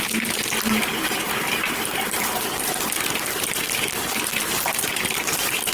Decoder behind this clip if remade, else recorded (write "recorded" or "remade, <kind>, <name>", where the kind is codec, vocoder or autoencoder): remade, vocoder, BigVGAN v2